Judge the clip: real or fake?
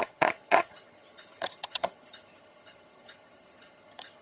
fake